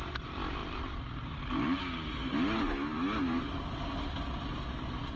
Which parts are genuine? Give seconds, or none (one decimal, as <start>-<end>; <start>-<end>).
0.0-5.2